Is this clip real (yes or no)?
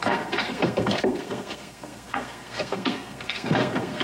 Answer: no